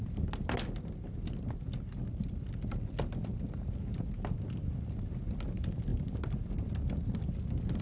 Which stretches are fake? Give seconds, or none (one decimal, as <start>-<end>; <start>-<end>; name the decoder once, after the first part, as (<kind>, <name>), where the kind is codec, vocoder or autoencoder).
none